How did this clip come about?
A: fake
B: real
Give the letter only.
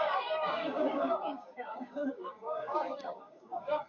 A